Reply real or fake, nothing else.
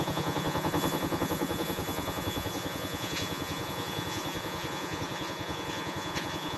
fake